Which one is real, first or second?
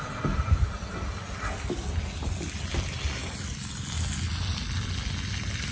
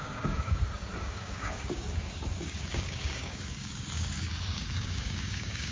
first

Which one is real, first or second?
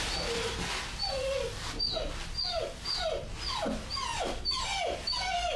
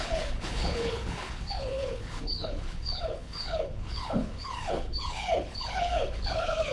first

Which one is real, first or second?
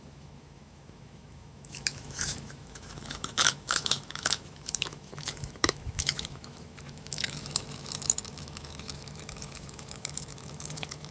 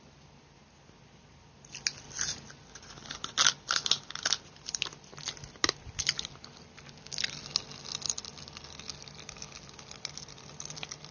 second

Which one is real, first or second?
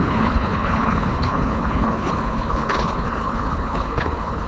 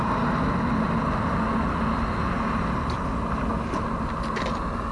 second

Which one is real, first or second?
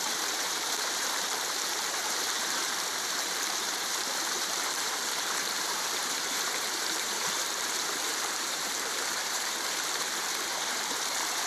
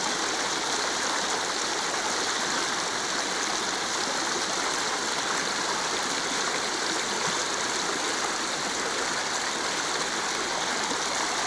second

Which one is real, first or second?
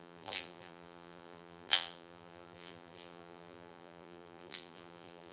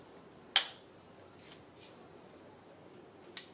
second